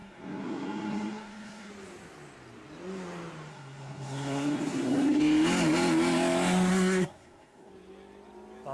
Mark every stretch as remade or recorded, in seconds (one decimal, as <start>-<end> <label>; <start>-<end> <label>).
0.0-1.7 remade; 1.7-3.5 recorded; 3.5-5.2 remade; 5.2-6.7 recorded; 6.7-7.7 remade; 7.7-8.7 recorded